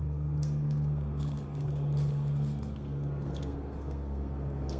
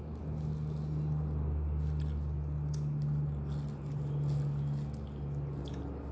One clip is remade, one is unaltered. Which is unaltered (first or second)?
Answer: second